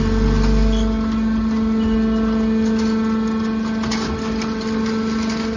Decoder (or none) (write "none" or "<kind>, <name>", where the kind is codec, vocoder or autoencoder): none